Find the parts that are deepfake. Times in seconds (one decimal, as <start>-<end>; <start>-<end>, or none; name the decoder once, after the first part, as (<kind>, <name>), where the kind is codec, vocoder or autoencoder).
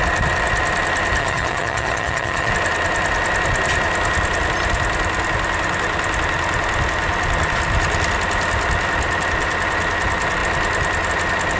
1.2-2.5 (vocoder, HiFi-GAN)